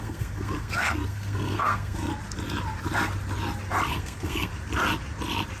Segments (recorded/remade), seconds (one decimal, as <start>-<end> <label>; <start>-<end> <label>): 0.0-2.1 remade; 2.1-3.9 recorded; 3.9-4.5 remade; 4.5-5.6 recorded